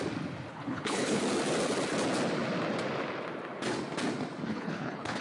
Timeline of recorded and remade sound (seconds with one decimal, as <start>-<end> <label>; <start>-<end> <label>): 0.0-0.5 recorded; 0.5-1.2 remade; 1.2-4.5 recorded; 4.5-5.2 remade